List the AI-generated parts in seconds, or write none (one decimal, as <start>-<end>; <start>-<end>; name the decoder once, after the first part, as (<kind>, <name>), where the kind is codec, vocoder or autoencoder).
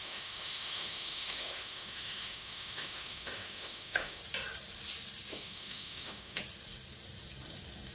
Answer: 0.0-4.2 (autoencoder, DAC-VAE); 5.3-6.4